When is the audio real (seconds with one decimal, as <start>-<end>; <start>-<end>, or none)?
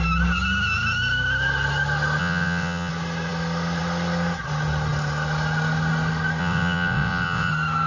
0.0-2.2; 2.9-6.4; 7.5-7.9